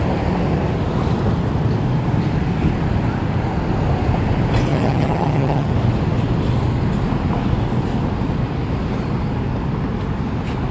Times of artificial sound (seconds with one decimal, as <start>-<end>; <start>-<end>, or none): 4.7-5.7